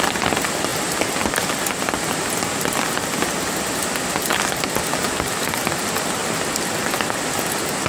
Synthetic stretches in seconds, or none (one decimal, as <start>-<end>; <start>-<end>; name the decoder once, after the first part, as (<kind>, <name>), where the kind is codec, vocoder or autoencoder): 0.7-3.3 (vocoder, BigVGAN v2)